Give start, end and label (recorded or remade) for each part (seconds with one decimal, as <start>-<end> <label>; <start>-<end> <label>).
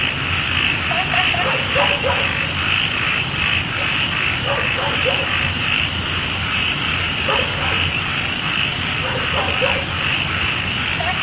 0.0-6.4 recorded; 6.4-7.0 remade; 7.0-11.2 recorded